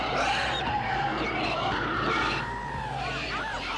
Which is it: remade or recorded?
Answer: remade